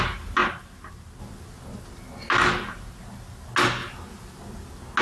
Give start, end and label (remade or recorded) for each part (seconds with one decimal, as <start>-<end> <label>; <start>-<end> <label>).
0.0-5.0 recorded